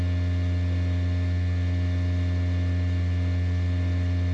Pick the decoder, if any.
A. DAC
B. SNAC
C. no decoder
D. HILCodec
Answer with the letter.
C